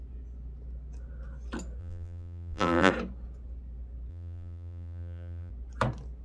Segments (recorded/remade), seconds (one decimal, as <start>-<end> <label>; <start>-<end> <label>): 0.0-1.8 recorded; 1.8-2.9 remade; 2.9-4.1 recorded; 4.1-5.5 remade; 5.5-6.2 recorded